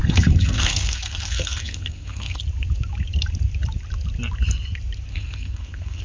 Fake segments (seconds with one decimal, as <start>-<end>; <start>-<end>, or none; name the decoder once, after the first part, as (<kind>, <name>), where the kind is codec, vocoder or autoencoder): 0.0-2.4 (codec, SNAC); 5.1-6.0